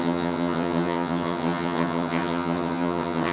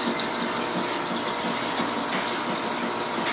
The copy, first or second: first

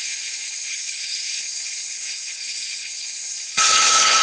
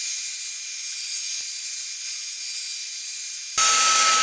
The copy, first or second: first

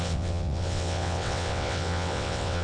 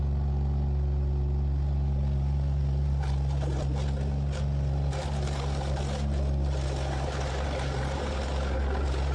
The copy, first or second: first